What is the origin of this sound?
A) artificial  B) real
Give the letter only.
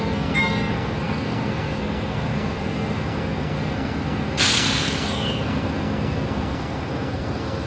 A